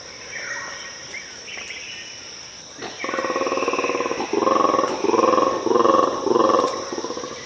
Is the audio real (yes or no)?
yes